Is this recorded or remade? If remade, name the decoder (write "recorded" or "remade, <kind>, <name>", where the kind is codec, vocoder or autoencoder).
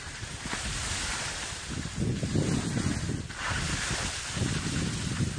recorded